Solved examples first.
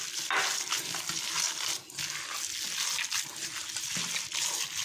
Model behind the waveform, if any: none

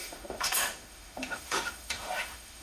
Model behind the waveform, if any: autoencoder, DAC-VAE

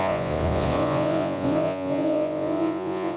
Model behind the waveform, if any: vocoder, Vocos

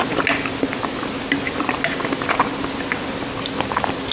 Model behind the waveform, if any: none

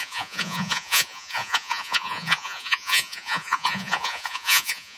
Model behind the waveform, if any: vocoder, Vocos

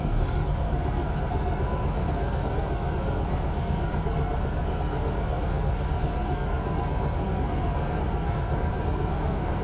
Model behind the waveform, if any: codec, SNAC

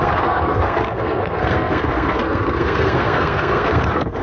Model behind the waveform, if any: codec, SNAC